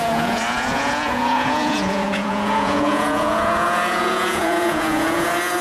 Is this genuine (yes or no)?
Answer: no